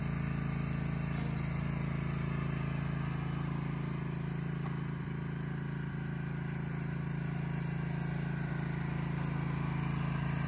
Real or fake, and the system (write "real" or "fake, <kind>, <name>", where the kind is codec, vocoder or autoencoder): real